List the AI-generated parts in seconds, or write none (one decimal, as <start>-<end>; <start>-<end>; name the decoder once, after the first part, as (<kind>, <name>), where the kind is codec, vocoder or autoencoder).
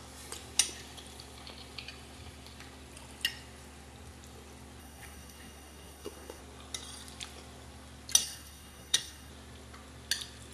4.8-6.4 (codec, SNAC); 8.2-9.3